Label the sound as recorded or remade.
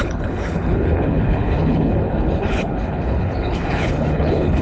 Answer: remade